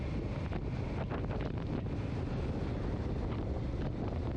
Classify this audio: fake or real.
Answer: real